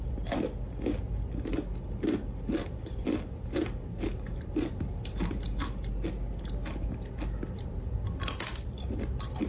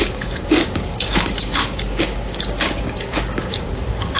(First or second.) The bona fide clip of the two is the first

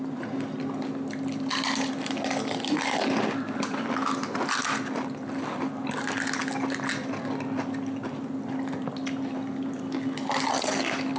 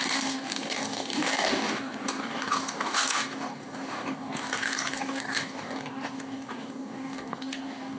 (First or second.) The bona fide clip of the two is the first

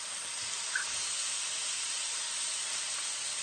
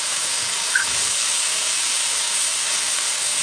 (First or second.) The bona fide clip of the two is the first